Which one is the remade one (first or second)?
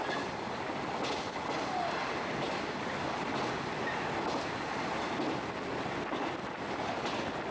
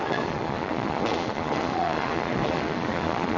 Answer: second